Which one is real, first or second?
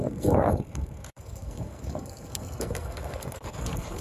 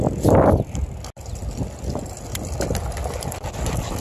second